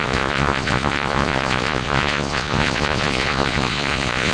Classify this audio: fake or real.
fake